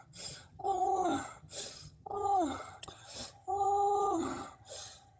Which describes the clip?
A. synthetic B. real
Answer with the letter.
A